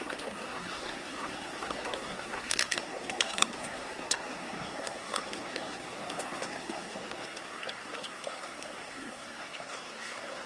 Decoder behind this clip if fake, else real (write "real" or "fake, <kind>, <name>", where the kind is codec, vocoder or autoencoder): fake, codec, SNAC